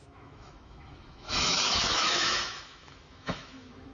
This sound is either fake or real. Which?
fake